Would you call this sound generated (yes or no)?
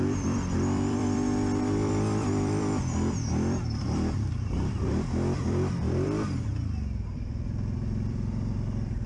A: yes